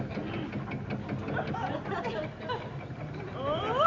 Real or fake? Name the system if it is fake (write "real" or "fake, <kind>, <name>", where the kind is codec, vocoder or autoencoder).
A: real